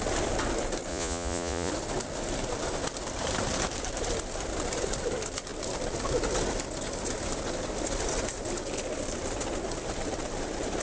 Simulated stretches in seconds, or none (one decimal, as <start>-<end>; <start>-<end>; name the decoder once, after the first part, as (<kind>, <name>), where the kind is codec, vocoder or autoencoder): 0.9-1.7 (vocoder, Vocos)